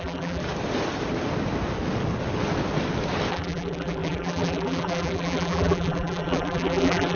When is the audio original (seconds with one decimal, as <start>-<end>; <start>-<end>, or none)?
0.4-3.3